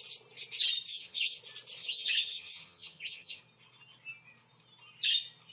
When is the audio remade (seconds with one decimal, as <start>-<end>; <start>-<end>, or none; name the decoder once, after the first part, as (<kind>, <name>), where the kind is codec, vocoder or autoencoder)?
0.9-1.4 (vocoder, HiFi-GAN); 1.8-3.4